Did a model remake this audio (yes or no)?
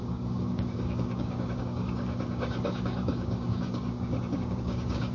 yes